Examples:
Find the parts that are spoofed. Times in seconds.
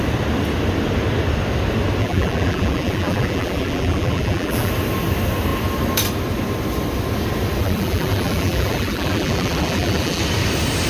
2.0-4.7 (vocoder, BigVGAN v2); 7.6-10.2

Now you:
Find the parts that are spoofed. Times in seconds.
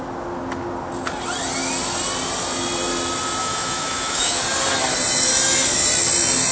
3.4-4.4 (autoencoder, DAC-VAE)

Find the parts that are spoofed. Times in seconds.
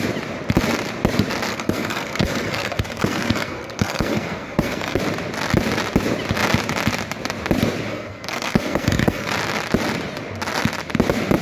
1.5-5.0 (codec, SNAC); 7.9-9.3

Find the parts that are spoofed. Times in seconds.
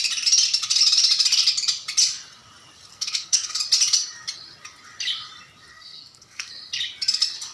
2.9-3.6 (codec, SNAC); 5.7-6.5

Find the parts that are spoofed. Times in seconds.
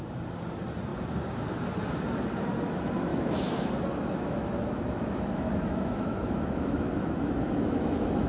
3.1-8.3 (autoencoder, DAC-VAE)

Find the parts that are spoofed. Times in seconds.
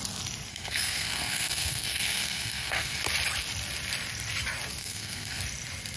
0.5-3.0 (codec, SNAC); 4.8-5.4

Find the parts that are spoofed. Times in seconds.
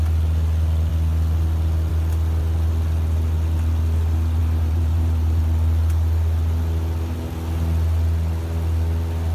4.4-5.4 (vocoder, BigVGAN v2)